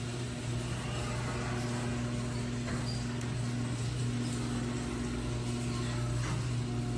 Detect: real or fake real